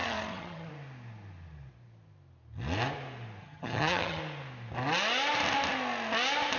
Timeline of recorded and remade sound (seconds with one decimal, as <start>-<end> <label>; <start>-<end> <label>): 0.0-0.7 remade; 0.7-3.4 recorded; 3.4-4.2 remade; 4.2-6.6 recorded